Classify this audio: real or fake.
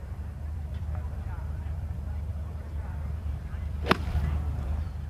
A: fake